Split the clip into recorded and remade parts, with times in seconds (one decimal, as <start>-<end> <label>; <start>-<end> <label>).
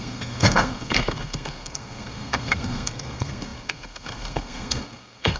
0.0-5.4 remade